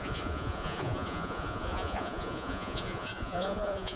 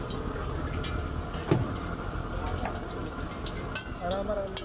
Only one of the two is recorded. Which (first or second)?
second